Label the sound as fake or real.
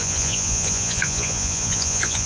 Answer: fake